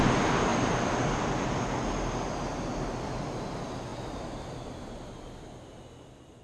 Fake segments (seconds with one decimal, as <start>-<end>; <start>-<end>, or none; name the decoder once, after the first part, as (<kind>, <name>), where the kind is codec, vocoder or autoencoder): none